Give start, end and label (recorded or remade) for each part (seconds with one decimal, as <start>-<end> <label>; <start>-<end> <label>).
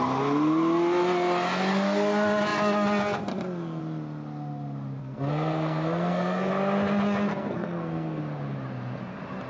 0.0-5.0 recorded; 5.0-6.5 remade; 6.5-7.3 recorded; 7.3-8.2 remade; 8.2-9.5 recorded